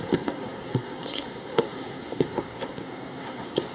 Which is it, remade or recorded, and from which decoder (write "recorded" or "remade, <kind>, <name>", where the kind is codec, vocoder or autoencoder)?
remade, codec, SNAC